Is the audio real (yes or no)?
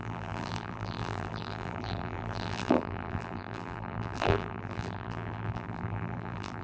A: no